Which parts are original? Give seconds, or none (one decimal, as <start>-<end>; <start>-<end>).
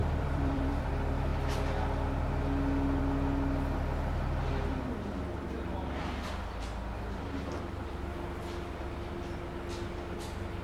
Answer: 0.9-10.6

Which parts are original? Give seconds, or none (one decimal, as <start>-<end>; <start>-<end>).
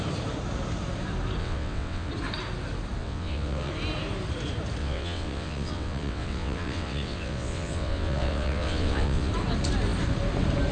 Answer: 0.0-1.4; 2.1-3.0; 3.7-4.8; 9.3-10.7